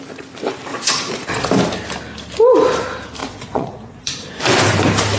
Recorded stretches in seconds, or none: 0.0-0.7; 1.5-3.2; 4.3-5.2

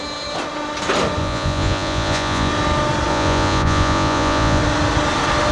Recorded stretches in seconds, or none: 0.0-1.2; 2.5-3.1; 4.6-5.5

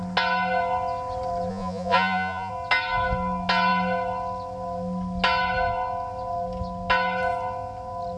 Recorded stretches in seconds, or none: 0.0-1.5; 2.5-8.2

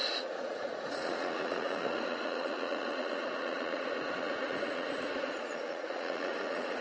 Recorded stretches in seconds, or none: none

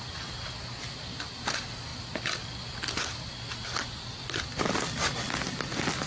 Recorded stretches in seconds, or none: 0.0-6.1

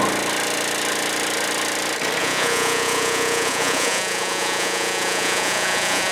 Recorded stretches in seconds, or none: 0.0-2.2